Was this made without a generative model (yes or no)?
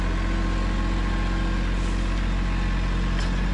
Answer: yes